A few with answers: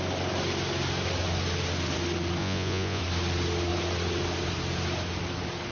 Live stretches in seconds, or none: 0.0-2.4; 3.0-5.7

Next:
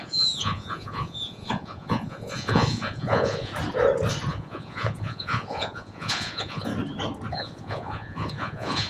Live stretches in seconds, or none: 3.5-4.3; 6.7-7.3

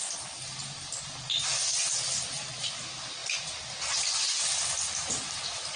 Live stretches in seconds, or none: 0.0-5.8

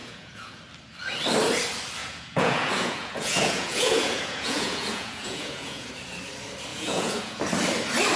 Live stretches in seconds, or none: 0.6-2.0; 5.9-6.7; 7.4-8.2

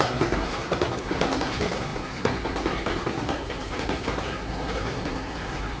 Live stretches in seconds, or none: none

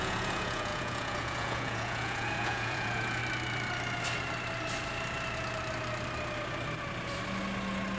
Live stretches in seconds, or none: 3.2-8.0

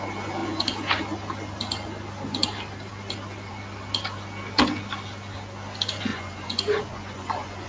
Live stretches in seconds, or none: 0.0-6.1

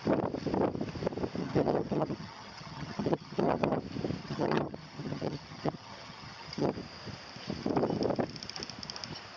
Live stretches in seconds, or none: 0.0-1.4; 3.8-4.2; 6.7-9.4